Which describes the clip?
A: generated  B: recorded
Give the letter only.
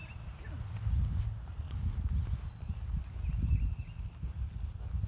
B